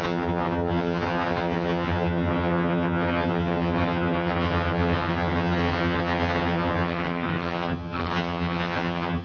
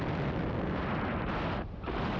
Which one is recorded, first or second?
second